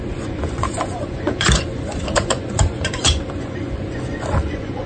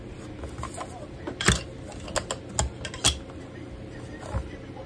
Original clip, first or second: second